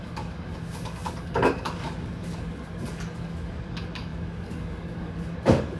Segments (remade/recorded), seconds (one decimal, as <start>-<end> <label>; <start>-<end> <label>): 0.0-5.8 remade